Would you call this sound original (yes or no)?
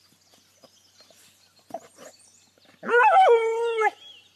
yes